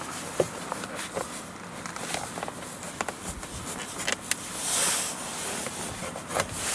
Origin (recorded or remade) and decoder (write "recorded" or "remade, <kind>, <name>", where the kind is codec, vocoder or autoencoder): recorded